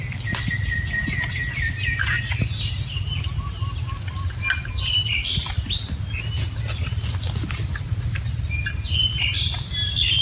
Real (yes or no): yes